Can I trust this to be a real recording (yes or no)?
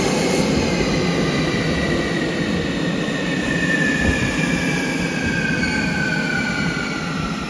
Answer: yes